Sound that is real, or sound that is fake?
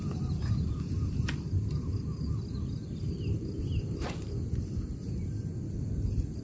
real